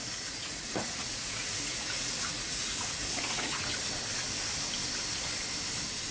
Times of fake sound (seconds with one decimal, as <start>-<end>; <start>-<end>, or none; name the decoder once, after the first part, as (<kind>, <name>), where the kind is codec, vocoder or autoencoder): 0.0-3.7 (vocoder, Vocos)